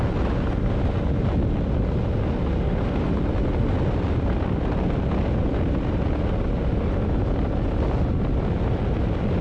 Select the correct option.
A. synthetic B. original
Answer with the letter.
B